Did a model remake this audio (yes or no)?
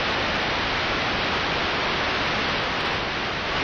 no